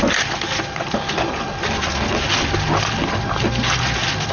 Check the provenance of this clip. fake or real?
real